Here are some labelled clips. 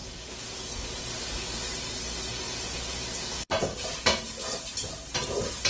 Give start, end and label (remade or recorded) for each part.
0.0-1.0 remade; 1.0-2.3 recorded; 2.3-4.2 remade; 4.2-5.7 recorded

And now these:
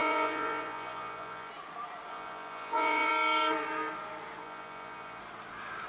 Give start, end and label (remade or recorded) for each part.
0.0-1.5 remade; 1.5-2.1 recorded; 2.1-3.1 remade; 3.1-4.4 recorded; 4.4-5.2 remade; 5.2-5.9 recorded